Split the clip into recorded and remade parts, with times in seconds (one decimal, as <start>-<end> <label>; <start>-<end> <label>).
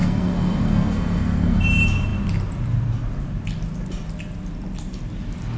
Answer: 0.0-1.6 remade; 1.6-5.6 recorded